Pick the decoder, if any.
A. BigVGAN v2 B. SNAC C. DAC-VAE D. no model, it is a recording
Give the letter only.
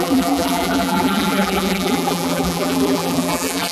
A